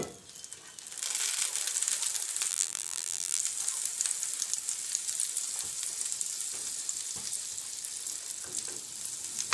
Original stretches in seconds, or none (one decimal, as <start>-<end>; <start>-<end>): 0.0-2.5; 3.4-9.5